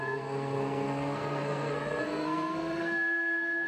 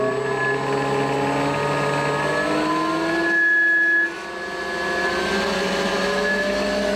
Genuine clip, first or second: second